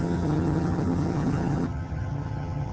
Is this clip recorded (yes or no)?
no